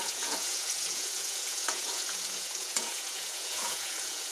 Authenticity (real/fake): fake